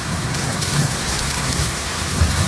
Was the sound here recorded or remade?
remade